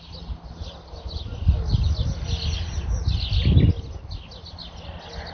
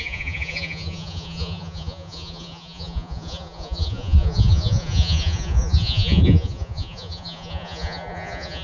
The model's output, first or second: second